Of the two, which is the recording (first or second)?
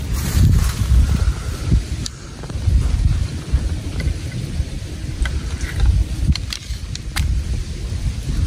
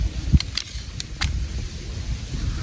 second